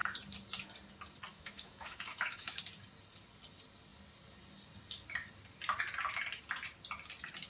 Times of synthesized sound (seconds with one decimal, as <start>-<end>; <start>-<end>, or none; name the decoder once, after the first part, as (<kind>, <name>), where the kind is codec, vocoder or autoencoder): 1.3-2.6 (autoencoder, DAC-VAE)